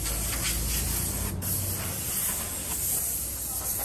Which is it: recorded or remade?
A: recorded